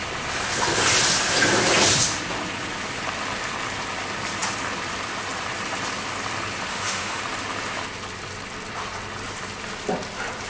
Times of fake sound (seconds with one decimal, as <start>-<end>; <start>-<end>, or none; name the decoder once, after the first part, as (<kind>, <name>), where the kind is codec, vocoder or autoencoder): 6.7-7.2 (autoencoder, DAC-VAE)